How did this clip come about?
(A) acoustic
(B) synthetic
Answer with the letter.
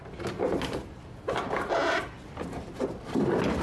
A